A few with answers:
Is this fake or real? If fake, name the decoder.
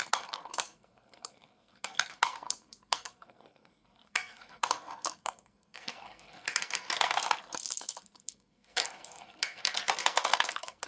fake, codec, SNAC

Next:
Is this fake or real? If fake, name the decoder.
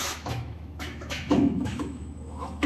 fake, autoencoder, DAC-VAE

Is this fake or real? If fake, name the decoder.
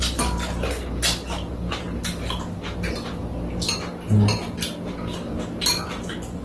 real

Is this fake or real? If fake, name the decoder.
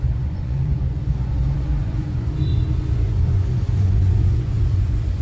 fake, vocoder, Vocos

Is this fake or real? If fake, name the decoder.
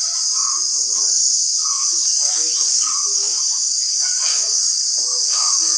fake, codec, DAC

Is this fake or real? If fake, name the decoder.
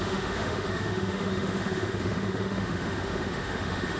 fake, autoencoder, DAC-VAE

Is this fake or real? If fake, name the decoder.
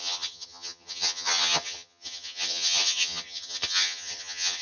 fake, vocoder, HiFi-GAN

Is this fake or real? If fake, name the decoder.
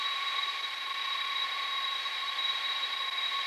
real